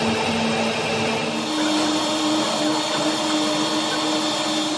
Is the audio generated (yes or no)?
no